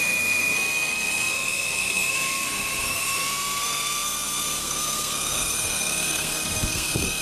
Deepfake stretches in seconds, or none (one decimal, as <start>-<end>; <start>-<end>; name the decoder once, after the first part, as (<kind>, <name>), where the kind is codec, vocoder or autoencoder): 0.0-7.2 (codec, SNAC)